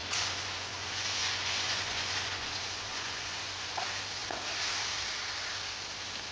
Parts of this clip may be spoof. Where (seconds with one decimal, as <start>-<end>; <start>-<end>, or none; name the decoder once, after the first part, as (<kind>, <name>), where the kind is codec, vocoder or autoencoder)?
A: 0.0-3.8 (vocoder, Vocos)

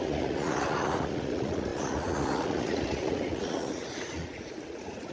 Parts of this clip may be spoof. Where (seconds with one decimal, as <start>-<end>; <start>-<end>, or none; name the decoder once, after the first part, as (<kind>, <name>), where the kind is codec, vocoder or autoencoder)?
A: 0.0-5.1 (vocoder, Vocos)

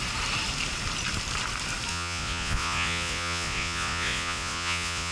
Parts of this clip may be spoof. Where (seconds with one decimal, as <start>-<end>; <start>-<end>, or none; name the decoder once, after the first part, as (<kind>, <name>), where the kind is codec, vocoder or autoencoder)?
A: 1.9-5.1 (vocoder, Vocos)

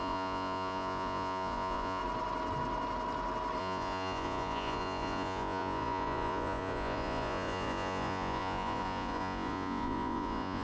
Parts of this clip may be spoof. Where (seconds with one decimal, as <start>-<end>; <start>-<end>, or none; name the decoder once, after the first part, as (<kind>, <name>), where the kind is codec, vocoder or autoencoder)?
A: 0.0-2.0 (vocoder, Vocos); 3.6-10.6

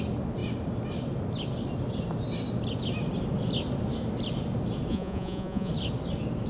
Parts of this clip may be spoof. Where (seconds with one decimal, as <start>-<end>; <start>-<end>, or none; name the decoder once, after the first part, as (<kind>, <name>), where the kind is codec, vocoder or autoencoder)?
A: 4.9-5.7 (vocoder, Vocos)

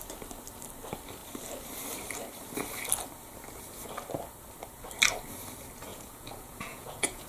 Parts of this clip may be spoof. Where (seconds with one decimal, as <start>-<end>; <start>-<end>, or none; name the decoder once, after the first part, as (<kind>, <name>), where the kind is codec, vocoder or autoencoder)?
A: 5.9-7.3 (vocoder, Vocos)

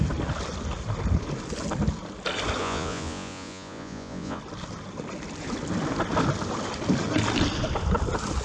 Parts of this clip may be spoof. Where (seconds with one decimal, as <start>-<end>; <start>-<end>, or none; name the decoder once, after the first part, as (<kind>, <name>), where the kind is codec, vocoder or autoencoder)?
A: 2.6-4.4 (vocoder, Vocos)

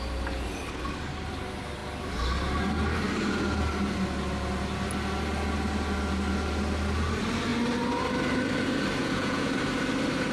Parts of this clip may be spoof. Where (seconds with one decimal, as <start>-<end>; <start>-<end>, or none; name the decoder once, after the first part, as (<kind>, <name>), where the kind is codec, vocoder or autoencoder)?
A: 9.0-9.5 (vocoder, Vocos)